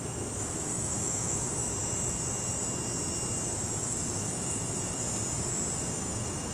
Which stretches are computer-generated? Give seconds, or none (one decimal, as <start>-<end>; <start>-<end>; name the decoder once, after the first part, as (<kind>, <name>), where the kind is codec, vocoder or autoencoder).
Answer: 0.0-1.6 (autoencoder, DAC-VAE); 3.5-5.0; 6.0-6.5

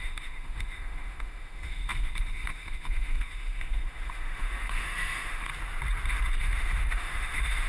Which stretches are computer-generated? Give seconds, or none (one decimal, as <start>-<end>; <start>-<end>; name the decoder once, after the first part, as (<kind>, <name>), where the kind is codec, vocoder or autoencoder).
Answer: 0.0-5.5 (autoencoder, DAC-VAE); 6.4-7.7

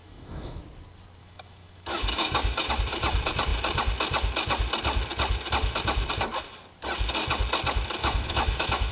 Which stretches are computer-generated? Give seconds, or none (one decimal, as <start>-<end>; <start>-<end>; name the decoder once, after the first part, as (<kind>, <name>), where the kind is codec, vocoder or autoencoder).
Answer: 0.0-0.6 (autoencoder, DAC-VAE); 1.2-2.7; 8.0-8.9

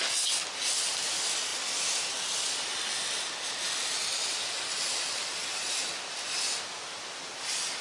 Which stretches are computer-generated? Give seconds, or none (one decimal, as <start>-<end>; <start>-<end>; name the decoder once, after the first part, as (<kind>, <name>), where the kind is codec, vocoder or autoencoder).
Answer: none

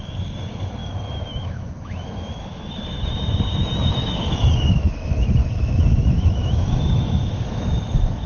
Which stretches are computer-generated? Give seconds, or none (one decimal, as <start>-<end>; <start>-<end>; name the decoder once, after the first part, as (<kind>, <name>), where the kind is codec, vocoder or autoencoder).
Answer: 0.8-2.7 (autoencoder, DAC-VAE); 3.6-8.3

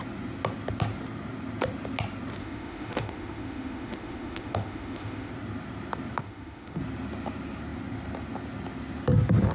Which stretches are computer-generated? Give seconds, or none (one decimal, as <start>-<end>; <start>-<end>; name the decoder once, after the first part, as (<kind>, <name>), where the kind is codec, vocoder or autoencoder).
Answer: 2.4-5.3 (autoencoder, DAC-VAE); 6.2-6.8

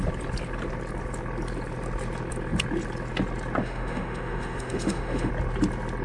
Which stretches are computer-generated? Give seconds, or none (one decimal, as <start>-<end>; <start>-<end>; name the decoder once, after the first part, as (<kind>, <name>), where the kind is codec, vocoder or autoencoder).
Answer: 3.6-5.3 (autoencoder, DAC-VAE)

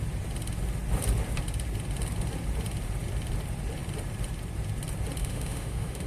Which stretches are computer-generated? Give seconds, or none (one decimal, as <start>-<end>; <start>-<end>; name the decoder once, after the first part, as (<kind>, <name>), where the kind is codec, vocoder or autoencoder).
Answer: 5.2-6.1 (autoencoder, DAC-VAE)